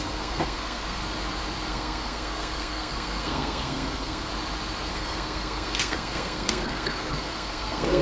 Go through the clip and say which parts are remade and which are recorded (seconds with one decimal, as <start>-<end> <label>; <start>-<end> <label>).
0.0-1.0 remade; 1.0-1.7 recorded; 1.7-4.3 remade; 4.3-4.9 recorded; 4.9-8.0 remade

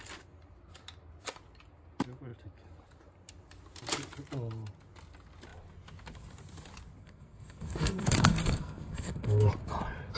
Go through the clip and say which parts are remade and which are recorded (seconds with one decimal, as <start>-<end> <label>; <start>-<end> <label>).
0.0-7.0 recorded; 7.0-9.5 remade; 9.5-10.2 recorded

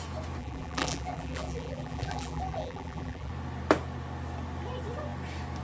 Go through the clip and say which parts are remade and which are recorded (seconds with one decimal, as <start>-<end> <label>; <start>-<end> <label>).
0.0-0.4 recorded; 0.4-3.3 remade; 3.3-5.6 recorded

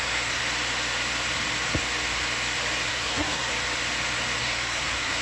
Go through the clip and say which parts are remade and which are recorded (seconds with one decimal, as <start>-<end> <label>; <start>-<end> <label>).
0.0-0.4 remade; 0.4-2.9 recorded; 2.9-3.5 remade; 3.5-4.4 recorded; 4.4-5.2 remade

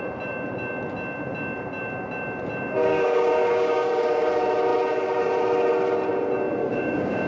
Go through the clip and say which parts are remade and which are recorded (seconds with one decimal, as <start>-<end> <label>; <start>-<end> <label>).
0.0-2.9 recorded; 2.9-4.3 remade; 4.3-6.6 recorded; 6.6-7.3 remade